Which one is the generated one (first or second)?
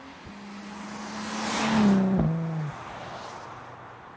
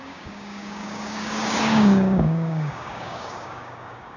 second